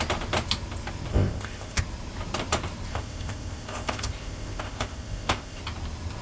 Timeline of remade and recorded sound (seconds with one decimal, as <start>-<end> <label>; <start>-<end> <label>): 0.0-1.1 recorded; 1.1-1.8 remade; 1.8-2.9 recorded; 2.9-5.6 remade; 5.6-6.2 recorded